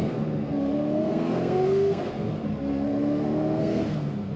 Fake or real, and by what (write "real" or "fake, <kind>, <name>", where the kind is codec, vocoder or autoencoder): fake, codec, SNAC